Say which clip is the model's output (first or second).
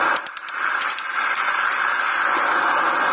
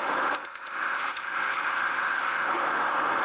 second